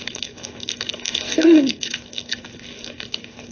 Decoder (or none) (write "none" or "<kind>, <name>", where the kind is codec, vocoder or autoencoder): codec, SNAC